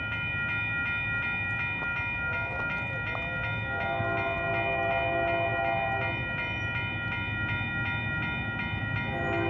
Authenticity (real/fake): real